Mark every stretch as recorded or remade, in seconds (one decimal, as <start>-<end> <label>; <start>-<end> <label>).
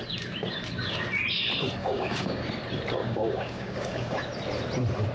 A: 0.0-1.8 recorded; 1.8-2.4 remade; 2.4-3.0 recorded; 3.0-4.2 remade; 4.2-5.1 recorded